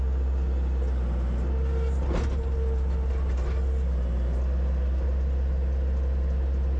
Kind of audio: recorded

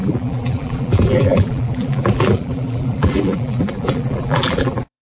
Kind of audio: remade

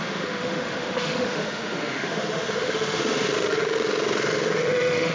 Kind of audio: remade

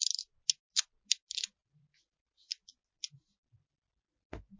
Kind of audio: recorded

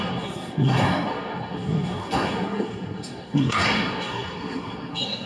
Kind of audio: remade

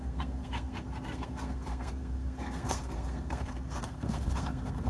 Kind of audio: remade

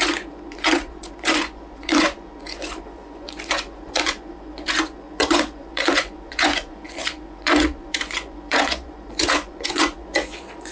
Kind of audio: remade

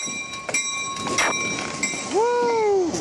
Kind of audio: recorded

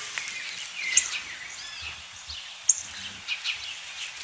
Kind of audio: remade